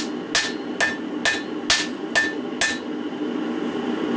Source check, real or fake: real